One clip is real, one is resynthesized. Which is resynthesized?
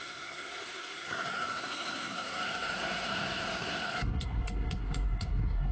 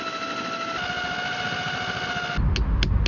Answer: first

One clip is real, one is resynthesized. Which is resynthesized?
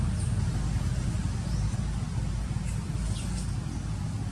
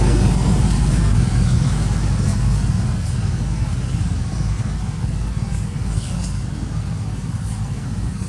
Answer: second